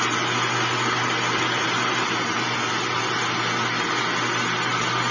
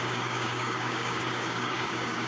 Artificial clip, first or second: second